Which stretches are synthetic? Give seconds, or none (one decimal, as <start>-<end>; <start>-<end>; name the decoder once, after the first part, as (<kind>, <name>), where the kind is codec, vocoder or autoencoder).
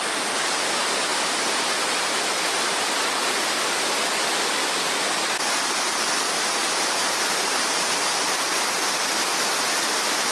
none